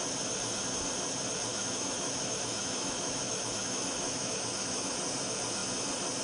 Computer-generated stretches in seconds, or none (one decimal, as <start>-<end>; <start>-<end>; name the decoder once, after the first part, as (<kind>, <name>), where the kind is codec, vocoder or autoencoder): 1.5-4.9 (autoencoder, DAC-VAE)